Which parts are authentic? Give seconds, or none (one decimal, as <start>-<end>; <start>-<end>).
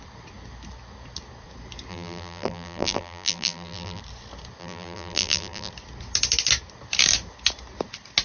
0.0-1.9; 4.0-4.6; 5.7-8.2